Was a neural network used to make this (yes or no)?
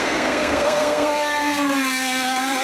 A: yes